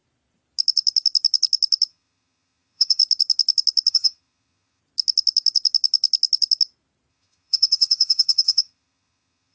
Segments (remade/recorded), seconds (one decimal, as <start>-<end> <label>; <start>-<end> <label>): 0.0-1.9 recorded; 1.9-3.0 remade; 3.0-3.9 recorded; 3.9-4.8 remade; 4.8-7.1 recorded; 7.1-9.5 remade

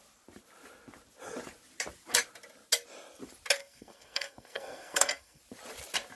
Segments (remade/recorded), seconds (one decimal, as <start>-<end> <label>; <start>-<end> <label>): 0.0-3.6 recorded; 3.6-5.4 remade; 5.4-6.2 recorded

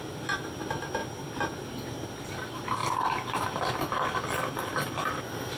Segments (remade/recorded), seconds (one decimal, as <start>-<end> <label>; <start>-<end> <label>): 0.0-5.6 recorded

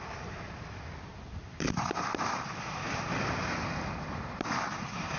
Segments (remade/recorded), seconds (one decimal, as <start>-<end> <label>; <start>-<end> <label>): 0.0-5.2 recorded